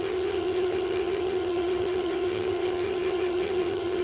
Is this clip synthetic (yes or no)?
yes